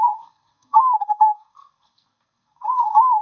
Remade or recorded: remade